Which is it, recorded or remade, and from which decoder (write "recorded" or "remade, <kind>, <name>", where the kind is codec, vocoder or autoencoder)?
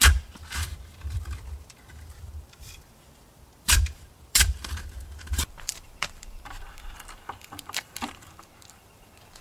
remade, vocoder, BigVGAN v2